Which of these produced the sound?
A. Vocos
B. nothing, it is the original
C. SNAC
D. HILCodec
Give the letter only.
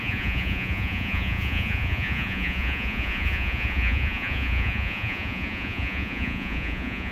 A